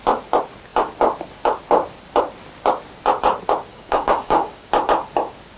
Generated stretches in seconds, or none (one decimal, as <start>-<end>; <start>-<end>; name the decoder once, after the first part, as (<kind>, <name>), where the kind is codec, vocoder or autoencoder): 3.7-4.7 (codec, DAC)